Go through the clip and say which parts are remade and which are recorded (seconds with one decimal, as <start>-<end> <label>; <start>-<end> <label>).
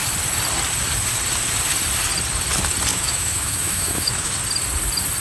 0.0-2.9 recorded; 2.9-4.3 remade; 4.3-5.2 recorded